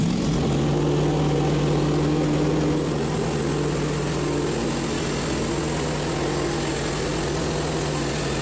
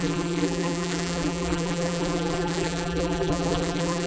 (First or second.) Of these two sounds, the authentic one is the first